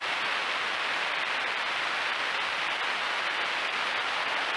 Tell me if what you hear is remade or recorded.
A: recorded